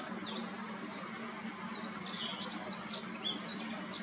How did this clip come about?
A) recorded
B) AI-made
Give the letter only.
A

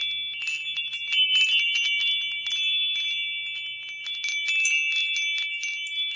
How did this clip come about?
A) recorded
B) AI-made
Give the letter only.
A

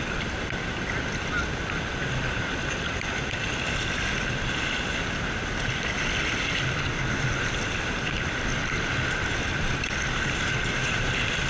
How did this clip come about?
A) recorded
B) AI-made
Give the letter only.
A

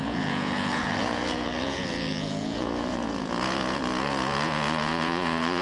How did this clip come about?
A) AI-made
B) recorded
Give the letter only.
A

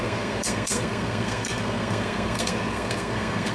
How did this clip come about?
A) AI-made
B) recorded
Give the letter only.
A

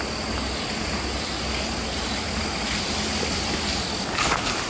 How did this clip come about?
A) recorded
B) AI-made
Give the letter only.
A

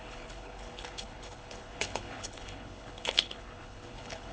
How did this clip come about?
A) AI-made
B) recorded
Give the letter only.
A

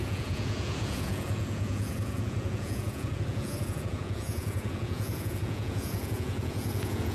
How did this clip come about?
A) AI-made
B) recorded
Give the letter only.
A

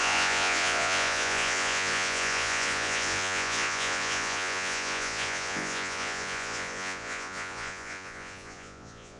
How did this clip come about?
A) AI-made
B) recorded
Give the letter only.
A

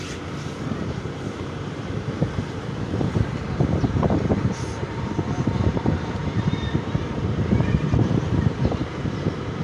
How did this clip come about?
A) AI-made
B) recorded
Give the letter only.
A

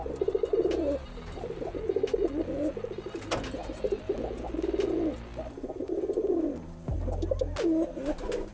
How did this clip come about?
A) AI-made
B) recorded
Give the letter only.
B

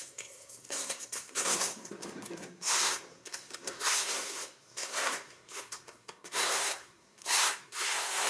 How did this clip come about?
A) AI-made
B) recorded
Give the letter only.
A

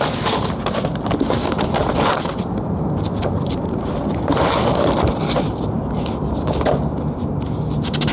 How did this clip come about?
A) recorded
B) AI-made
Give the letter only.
A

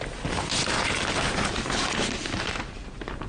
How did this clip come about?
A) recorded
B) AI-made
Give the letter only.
A